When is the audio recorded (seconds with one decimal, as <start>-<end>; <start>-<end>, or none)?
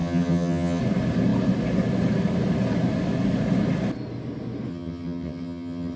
0.8-4.7